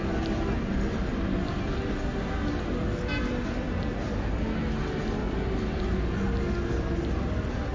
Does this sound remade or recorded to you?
recorded